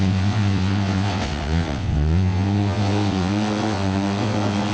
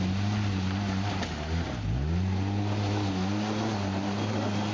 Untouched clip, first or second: second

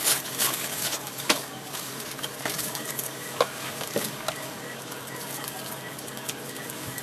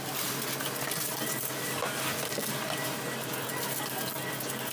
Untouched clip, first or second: second